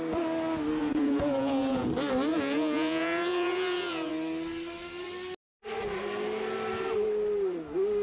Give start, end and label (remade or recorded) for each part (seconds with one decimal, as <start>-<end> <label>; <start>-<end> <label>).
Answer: 0.0-0.8 recorded; 0.8-1.9 remade; 1.9-2.3 recorded; 2.3-4.1 remade; 4.1-8.0 recorded